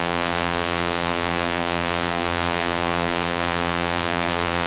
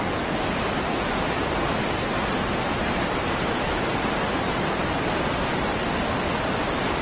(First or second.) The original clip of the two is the second